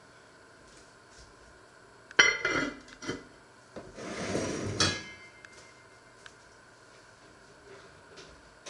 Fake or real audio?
real